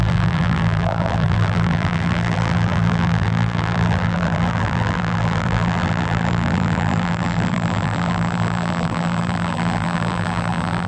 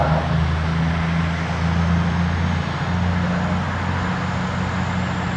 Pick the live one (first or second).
second